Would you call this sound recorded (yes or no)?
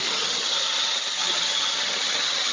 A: no